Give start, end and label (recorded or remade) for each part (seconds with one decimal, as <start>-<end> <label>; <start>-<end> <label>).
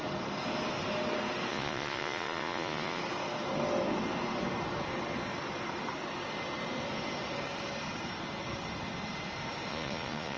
0.0-1.5 recorded; 1.5-3.0 remade; 3.0-9.7 recorded; 9.7-10.4 remade